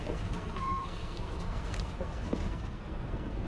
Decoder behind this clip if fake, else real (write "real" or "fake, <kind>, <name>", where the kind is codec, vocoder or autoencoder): fake, codec, SNAC